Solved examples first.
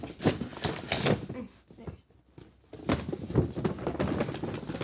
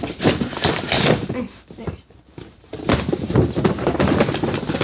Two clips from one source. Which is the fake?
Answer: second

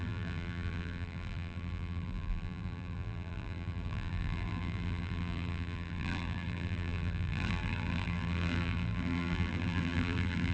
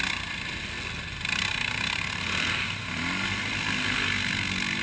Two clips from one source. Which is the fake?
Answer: first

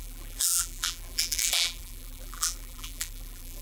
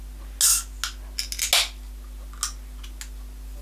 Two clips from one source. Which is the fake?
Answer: first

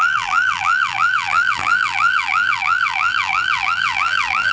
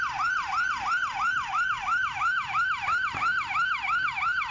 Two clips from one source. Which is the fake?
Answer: first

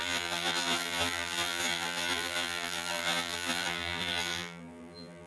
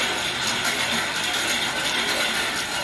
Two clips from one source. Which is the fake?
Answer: first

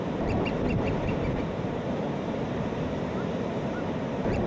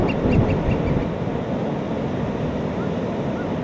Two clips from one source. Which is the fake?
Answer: first